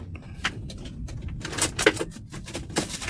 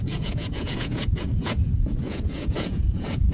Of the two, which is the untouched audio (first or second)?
first